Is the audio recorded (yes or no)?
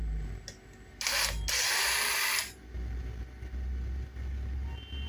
yes